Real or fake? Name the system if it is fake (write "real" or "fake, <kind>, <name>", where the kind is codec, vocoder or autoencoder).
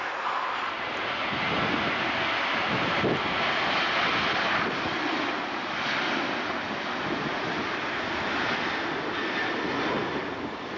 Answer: real